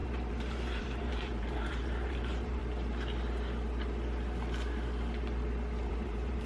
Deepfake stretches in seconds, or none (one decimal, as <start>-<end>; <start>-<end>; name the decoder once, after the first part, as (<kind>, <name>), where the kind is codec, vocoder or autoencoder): 0.0-2.6 (vocoder, BigVGAN v2); 5.9-6.5